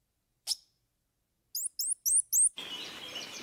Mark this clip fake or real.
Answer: real